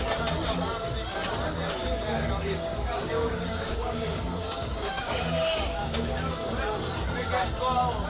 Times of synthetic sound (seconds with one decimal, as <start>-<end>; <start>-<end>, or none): 1.8-6.5